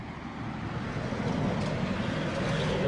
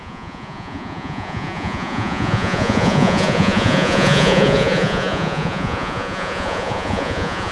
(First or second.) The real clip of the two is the first